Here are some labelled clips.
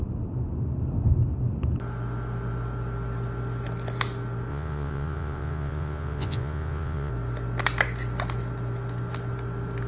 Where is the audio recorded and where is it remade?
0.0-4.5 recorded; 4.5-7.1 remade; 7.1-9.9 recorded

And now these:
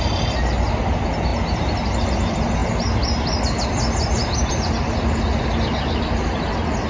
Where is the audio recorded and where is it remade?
0.0-6.9 recorded

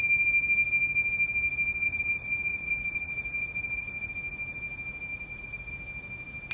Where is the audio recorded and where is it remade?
0.0-1.8 recorded; 1.8-4.1 remade; 4.1-5.1 recorded; 5.1-5.7 remade; 5.7-6.5 recorded

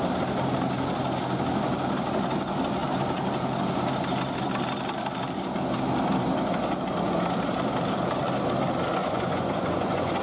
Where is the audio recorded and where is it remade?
0.0-9.0 recorded; 9.0-10.2 remade

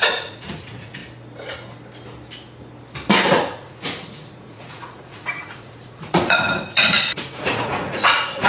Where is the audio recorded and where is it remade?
0.0-1.0 remade; 1.0-3.3 recorded; 3.3-8.5 remade

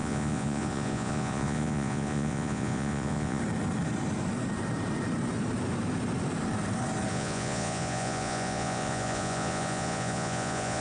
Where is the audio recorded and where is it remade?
0.0-3.4 remade; 3.4-7.1 recorded; 7.1-10.8 remade

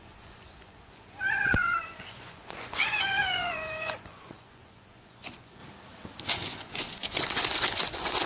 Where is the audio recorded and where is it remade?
0.0-5.6 remade; 5.6-6.3 recorded; 6.3-8.3 remade